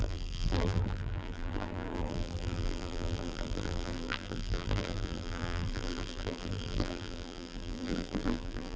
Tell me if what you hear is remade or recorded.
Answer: remade